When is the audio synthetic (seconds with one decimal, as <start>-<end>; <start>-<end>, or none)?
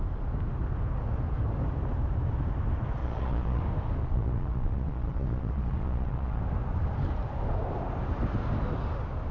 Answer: 3.0-3.6; 4.0-6.4